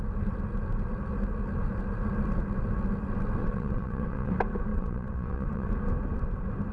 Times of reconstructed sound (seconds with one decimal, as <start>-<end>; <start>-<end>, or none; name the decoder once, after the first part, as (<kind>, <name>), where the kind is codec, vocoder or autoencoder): 3.4-4.3 (vocoder, WaveNeXt); 4.7-5.7